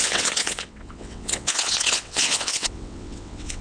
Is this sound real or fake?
fake